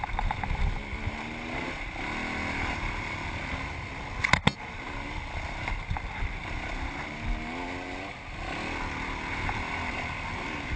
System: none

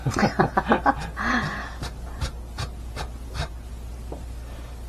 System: none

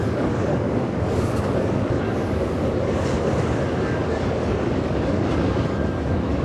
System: codec, DAC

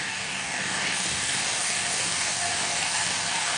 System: codec, DAC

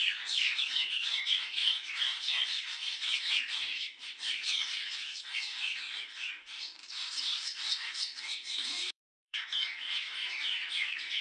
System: codec, DAC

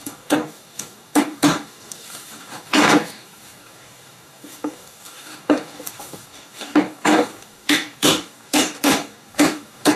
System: codec, DAC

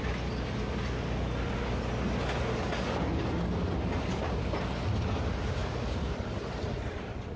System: none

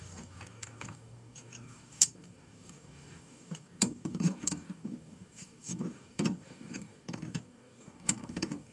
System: codec, DAC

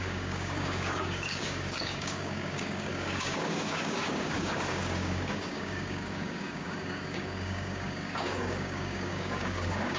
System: codec, DAC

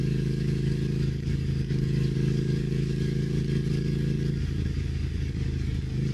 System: codec, DAC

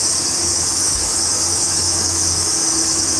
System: codec, DAC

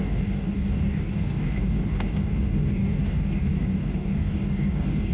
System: codec, DAC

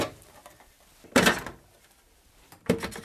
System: none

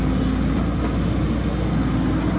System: none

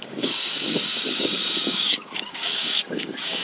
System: codec, DAC